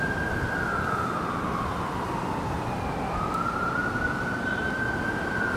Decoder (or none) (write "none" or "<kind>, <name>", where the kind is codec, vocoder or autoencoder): none